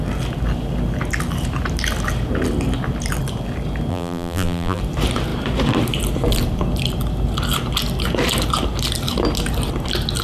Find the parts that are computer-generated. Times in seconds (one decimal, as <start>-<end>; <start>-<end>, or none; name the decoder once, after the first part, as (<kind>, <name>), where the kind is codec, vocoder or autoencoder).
3.9-4.8 (vocoder, BigVGAN v2)

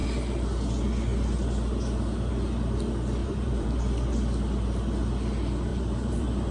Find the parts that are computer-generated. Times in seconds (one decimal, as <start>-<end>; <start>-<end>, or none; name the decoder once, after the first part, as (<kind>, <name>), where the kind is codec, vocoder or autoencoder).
3.2-3.8 (vocoder, BigVGAN v2); 5.7-6.5